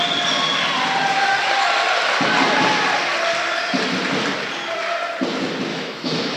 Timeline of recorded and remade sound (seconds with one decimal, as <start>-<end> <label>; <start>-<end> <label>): 0.0-5.7 recorded; 5.7-6.4 remade